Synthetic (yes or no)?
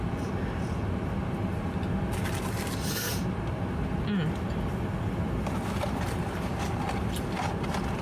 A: no